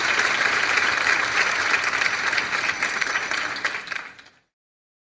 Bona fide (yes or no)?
no